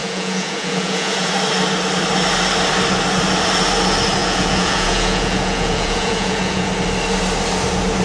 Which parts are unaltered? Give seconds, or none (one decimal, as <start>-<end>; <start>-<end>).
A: 1.3-4.2; 6.7-8.0